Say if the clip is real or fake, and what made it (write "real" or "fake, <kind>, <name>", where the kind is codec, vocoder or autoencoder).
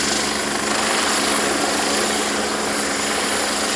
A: real